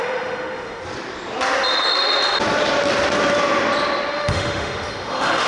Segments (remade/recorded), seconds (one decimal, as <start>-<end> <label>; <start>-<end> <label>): 0.0-0.8 remade; 0.8-4.1 recorded; 4.1-5.5 remade